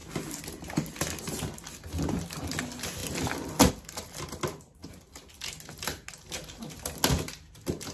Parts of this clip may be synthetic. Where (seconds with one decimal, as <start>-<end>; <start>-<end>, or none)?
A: none